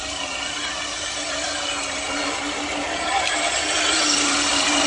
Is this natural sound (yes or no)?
yes